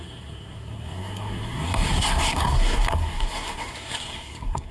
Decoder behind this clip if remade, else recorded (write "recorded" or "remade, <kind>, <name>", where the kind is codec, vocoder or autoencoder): remade, codec, SNAC